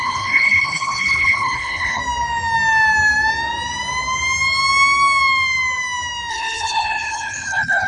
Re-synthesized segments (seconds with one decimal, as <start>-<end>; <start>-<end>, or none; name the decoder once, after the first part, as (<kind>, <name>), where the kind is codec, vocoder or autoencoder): 0.0-2.0 (codec, HILCodec); 6.3-7.9